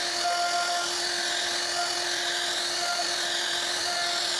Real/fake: real